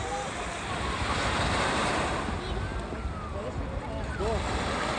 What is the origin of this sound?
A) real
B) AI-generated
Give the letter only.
A